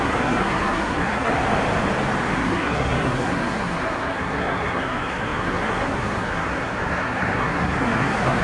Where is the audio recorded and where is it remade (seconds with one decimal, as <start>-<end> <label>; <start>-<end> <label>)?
0.0-1.3 remade; 1.3-2.3 recorded; 2.3-8.4 remade